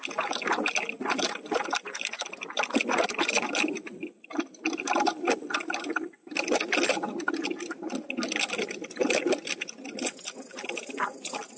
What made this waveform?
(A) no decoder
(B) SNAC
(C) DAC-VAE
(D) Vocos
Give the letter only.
A